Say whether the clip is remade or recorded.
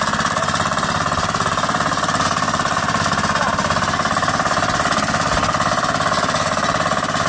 remade